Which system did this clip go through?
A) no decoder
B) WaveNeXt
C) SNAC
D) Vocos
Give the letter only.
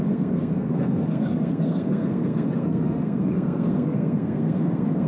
C